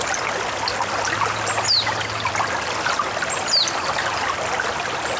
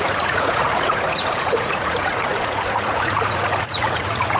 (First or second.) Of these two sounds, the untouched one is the first